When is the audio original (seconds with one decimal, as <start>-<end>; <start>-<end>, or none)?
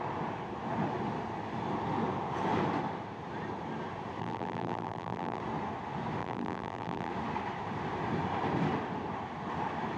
0.0-4.2; 5.4-6.2; 7.1-10.0